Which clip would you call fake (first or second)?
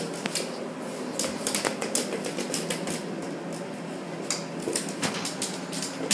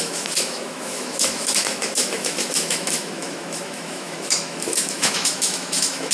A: second